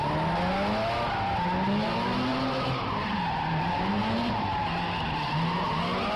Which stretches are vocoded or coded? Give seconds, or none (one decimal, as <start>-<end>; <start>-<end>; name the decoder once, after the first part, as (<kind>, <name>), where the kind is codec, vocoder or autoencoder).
2.3-5.8 (vocoder, BigVGAN v2)